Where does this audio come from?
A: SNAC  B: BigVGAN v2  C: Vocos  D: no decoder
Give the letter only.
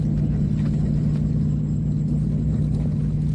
D